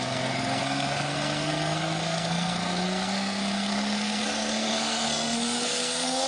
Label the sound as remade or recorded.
remade